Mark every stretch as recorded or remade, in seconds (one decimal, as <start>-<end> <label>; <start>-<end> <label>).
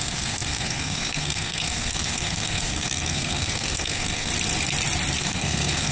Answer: 0.0-4.3 remade; 4.3-5.2 recorded; 5.2-5.9 remade